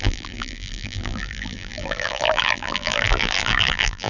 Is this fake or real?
fake